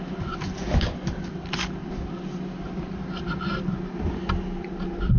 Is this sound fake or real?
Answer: real